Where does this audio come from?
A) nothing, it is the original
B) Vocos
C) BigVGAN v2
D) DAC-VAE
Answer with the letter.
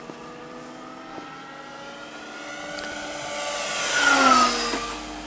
A